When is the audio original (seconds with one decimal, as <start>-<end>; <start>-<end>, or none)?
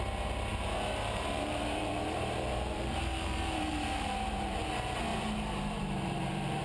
0.0-0.5; 4.5-5.1